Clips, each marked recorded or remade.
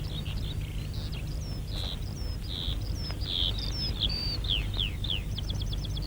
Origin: recorded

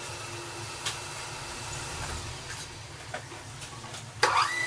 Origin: recorded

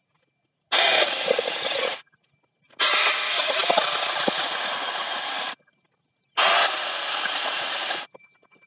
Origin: recorded